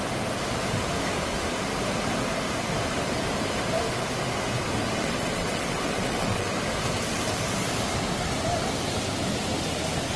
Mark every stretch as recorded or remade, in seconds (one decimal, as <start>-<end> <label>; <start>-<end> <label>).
0.0-5.0 recorded; 5.0-6.5 remade; 6.5-10.2 recorded